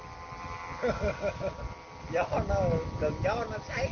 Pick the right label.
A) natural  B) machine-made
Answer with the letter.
A